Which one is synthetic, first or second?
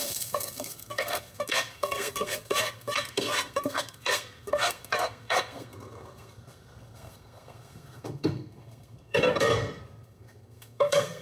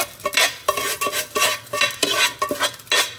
first